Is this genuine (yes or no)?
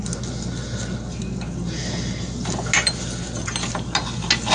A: yes